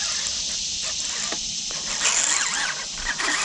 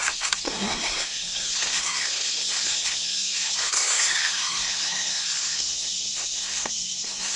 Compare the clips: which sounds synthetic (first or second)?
second